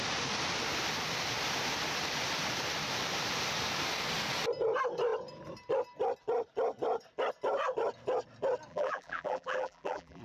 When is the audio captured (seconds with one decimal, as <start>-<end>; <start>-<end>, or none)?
0.0-8.7